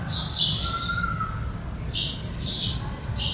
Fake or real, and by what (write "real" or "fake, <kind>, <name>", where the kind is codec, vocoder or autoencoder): real